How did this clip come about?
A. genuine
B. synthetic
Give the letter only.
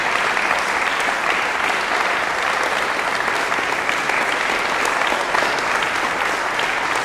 A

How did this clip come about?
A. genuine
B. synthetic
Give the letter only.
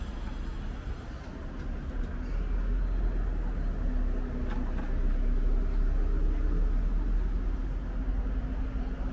A